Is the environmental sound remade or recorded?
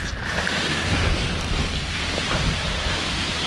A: remade